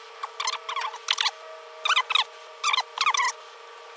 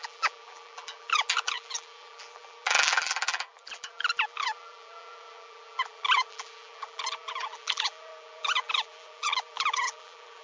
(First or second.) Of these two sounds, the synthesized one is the second